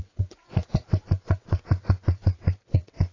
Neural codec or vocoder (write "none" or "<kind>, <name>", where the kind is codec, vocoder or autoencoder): vocoder, WaveNeXt